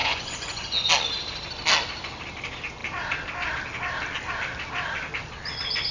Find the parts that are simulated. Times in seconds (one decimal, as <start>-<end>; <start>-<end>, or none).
0.0-0.9